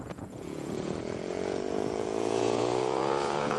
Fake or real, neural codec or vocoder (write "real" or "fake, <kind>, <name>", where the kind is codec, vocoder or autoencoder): fake, vocoder, Vocos